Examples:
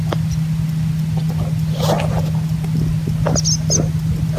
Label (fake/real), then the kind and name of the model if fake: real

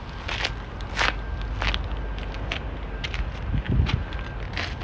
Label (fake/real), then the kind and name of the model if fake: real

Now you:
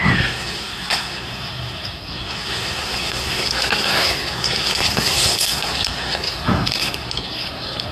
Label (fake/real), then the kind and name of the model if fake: fake, codec, SNAC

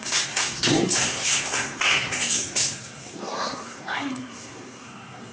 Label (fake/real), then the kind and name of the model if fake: fake, codec, SNAC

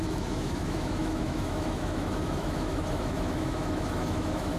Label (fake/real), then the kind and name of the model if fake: fake, autoencoder, DAC-VAE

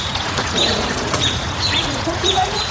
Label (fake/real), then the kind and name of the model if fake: fake, vocoder, Vocos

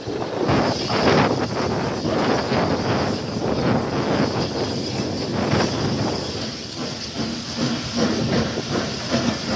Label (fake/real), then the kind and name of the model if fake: real